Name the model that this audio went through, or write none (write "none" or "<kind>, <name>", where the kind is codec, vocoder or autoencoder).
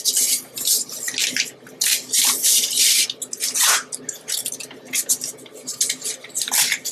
none